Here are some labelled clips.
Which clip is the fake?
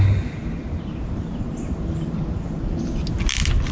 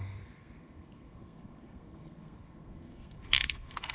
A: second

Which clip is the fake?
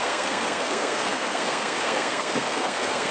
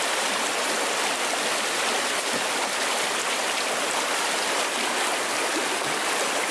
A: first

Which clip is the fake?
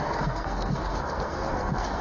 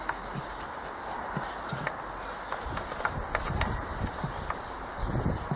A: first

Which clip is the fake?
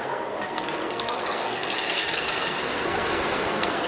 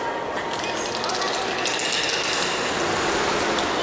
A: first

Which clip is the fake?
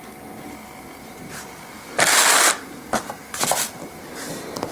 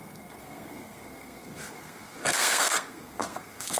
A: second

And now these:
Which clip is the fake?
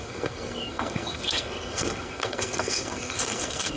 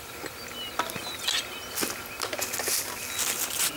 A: first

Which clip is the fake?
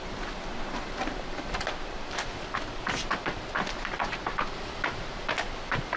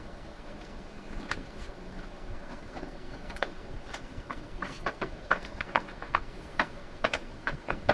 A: second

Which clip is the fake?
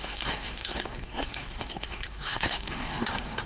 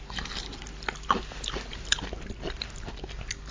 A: first